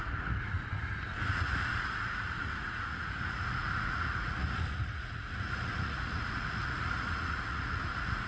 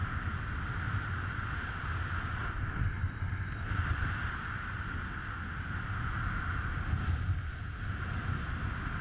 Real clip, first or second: second